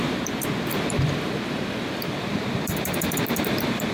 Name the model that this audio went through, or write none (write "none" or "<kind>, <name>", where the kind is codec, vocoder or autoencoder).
vocoder, BigVGAN v2